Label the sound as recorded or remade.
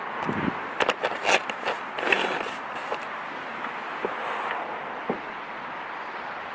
recorded